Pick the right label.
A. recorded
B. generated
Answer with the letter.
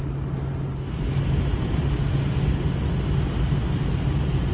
A